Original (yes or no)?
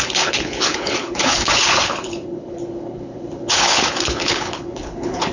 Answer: no